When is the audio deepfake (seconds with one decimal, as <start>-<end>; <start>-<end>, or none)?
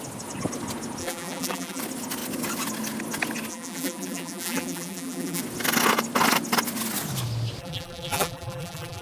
1.0-1.8; 3.5-5.4; 7.6-9.0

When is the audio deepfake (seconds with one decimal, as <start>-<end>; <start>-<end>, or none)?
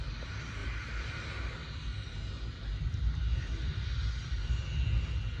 0.0-0.6; 3.4-5.4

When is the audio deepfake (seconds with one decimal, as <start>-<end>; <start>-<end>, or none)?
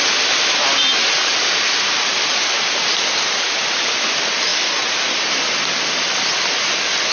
none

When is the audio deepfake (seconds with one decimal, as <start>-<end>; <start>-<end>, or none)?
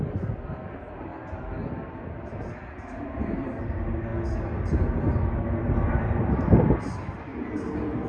0.0-1.1; 3.0-4.1; 5.6-7.3